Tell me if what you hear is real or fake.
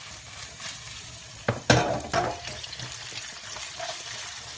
real